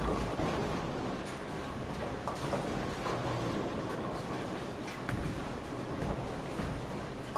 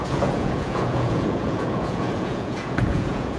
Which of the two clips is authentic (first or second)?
first